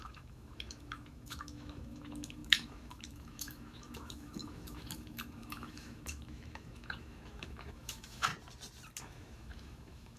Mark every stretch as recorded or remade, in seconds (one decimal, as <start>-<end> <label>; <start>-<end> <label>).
0.0-8.3 remade; 8.3-9.0 recorded; 9.0-10.2 remade